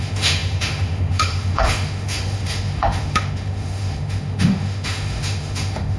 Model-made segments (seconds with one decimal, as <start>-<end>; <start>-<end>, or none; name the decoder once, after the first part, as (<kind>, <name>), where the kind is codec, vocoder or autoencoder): 0.0-6.0 (autoencoder, DAC-VAE)